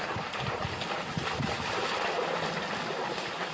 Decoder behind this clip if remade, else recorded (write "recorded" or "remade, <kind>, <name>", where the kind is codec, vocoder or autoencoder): recorded